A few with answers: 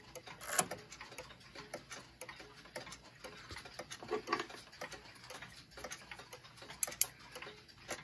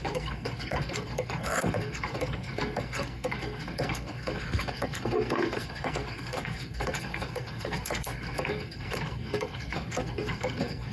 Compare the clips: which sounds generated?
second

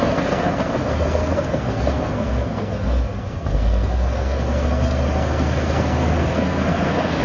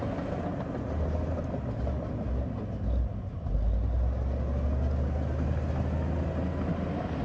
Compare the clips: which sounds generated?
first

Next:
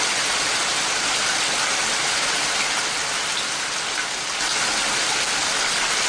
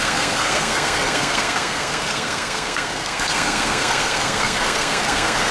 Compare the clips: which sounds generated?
second